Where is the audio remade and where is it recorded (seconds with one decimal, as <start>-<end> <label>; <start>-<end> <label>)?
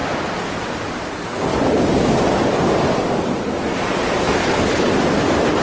0.0-4.4 recorded; 4.4-4.9 remade; 4.9-5.6 recorded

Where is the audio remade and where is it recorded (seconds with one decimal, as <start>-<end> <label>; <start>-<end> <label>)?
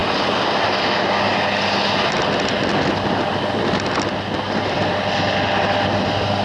0.0-6.4 recorded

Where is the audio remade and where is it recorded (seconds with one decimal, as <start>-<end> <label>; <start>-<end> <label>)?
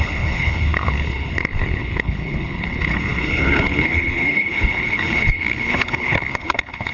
0.0-6.9 remade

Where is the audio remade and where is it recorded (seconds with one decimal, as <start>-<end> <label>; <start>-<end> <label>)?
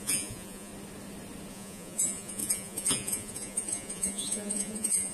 0.0-0.7 remade; 0.7-1.5 recorded; 1.5-5.1 remade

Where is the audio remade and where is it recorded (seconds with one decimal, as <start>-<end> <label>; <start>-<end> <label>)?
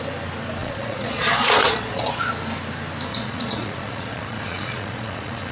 0.0-0.6 recorded; 0.6-2.3 remade; 2.3-3.1 recorded; 3.1-5.5 remade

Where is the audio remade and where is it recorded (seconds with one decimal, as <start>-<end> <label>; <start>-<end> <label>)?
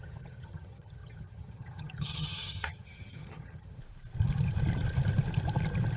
0.0-3.8 remade; 3.8-6.0 recorded